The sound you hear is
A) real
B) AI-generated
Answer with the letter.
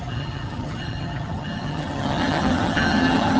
B